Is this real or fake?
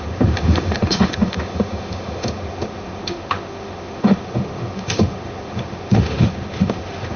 fake